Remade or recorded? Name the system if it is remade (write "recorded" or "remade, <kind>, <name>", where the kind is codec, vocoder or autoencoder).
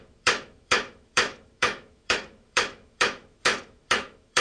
remade, autoencoder, DAC-VAE